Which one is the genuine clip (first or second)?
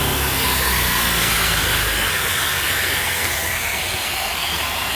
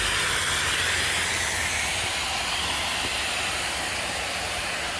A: second